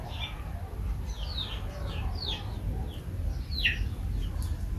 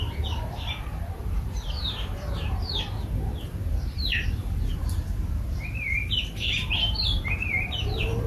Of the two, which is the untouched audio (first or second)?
first